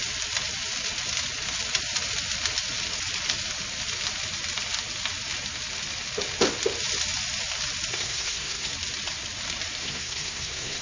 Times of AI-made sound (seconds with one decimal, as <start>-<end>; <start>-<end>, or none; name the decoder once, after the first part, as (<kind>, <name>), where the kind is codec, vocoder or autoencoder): 7.9-8.7 (codec, SNAC); 9.8-10.8